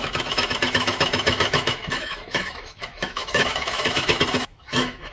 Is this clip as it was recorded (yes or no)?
no